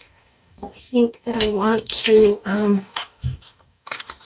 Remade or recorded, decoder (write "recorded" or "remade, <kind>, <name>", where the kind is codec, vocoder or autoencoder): remade, codec, DAC